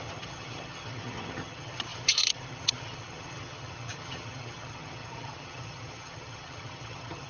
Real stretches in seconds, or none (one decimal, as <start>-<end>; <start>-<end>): none